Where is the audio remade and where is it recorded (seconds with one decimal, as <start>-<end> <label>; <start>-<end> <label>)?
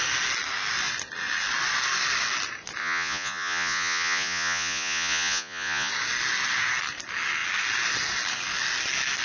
0.0-2.8 recorded; 2.8-5.9 remade; 5.9-9.2 recorded